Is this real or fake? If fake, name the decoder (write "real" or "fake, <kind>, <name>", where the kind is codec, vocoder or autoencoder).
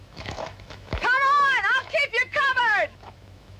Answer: fake, autoencoder, DAC-VAE